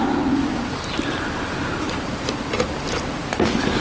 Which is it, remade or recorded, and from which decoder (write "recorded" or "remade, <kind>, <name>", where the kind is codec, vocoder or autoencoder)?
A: recorded